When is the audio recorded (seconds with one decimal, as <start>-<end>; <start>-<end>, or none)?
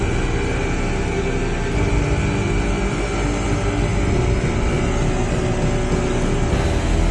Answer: 0.0-7.1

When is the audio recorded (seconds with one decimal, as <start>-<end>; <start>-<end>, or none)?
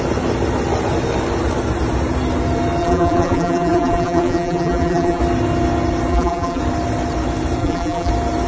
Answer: 0.0-2.8; 5.2-6.1; 6.6-7.6; 8.1-8.5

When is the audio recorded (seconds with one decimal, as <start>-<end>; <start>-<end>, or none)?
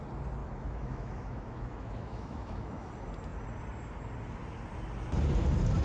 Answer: 0.0-0.4; 2.9-5.8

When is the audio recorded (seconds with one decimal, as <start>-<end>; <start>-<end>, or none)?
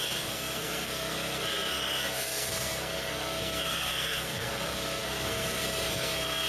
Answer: none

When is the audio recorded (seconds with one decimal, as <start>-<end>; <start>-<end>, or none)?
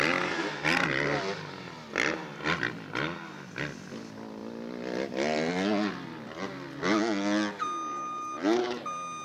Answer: 0.0-9.2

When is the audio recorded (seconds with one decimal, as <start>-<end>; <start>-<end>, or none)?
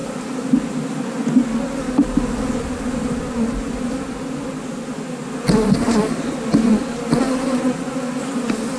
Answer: 0.6-8.8